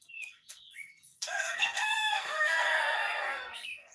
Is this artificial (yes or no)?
yes